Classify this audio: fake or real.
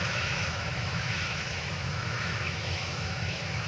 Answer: fake